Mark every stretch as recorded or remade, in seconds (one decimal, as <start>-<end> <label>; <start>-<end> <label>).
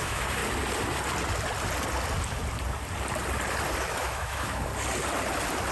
0.0-0.4 remade; 0.4-3.8 recorded; 3.8-4.7 remade; 4.7-5.7 recorded